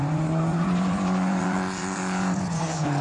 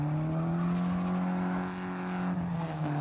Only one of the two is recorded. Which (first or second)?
second